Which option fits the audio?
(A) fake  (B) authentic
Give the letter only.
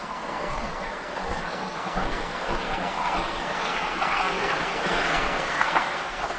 A